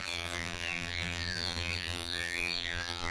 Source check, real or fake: fake